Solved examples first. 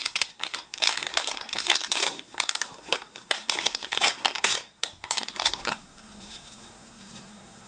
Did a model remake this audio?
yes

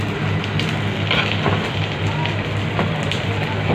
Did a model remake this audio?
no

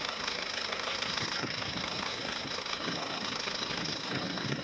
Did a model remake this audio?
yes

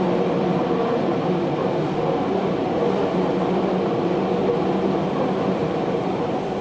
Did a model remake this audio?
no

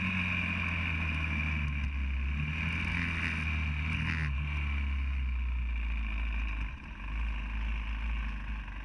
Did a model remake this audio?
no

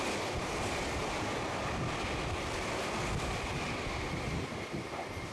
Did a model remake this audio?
no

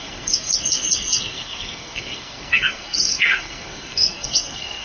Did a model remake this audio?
yes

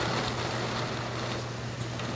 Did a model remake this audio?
no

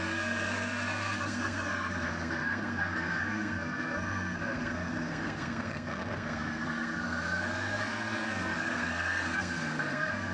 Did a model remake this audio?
yes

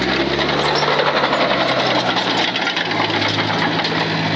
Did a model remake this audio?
no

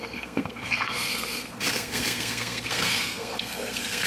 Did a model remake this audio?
yes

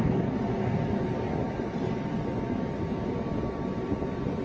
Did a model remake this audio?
no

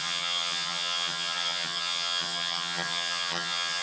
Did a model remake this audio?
yes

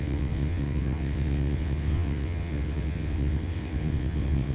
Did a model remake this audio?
yes